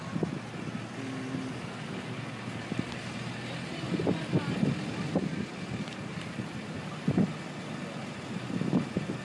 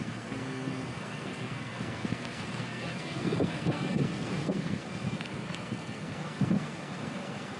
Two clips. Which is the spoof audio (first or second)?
second